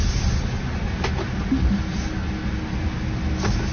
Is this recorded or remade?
recorded